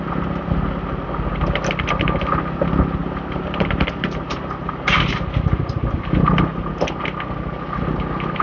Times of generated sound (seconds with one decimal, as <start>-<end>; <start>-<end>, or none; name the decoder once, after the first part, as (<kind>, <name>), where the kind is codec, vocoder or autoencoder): 3.0-6.7 (vocoder, BigVGAN v2)